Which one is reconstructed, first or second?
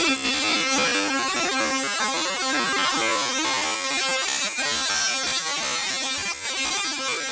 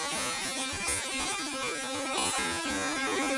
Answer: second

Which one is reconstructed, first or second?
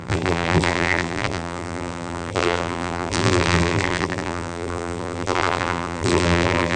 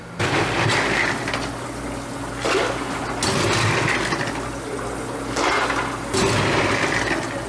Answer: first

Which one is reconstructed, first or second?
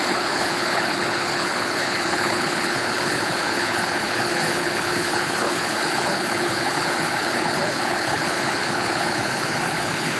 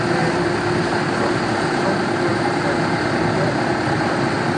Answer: first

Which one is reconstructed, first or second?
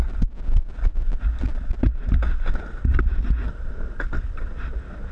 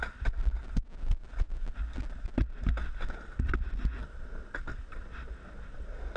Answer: first